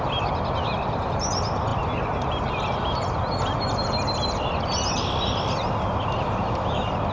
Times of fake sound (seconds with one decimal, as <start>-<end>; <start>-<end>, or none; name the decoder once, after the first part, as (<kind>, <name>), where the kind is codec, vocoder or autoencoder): none